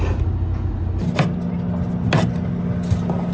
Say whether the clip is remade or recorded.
recorded